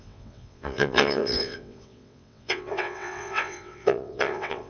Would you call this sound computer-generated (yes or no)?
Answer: yes